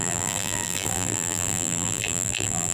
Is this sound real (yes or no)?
no